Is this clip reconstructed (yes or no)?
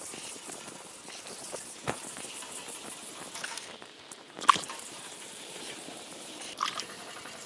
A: yes